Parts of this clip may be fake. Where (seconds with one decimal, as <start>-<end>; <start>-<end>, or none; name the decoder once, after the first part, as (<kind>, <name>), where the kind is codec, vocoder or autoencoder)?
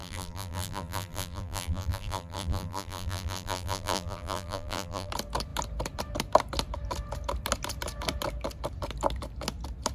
0.0-5.1 (vocoder, BigVGAN v2)